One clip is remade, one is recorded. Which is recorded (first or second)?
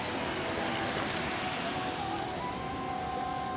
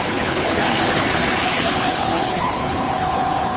first